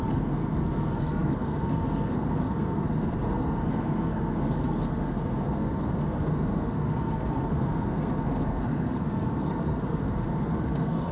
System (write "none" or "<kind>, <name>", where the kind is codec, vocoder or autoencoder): codec, SNAC